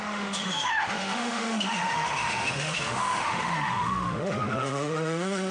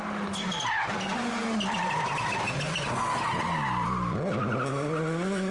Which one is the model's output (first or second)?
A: first